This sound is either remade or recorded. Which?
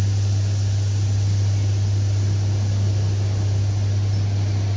recorded